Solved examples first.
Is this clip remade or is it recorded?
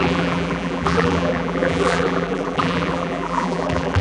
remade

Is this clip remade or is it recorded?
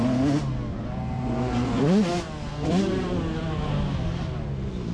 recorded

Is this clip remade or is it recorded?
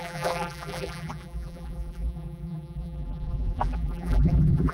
remade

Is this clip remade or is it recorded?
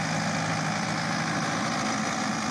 recorded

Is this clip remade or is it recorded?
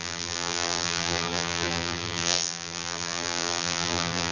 remade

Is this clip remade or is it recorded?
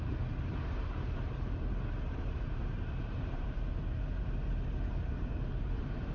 remade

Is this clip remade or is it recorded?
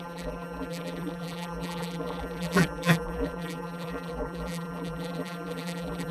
remade